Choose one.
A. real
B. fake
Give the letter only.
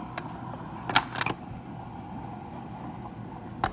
A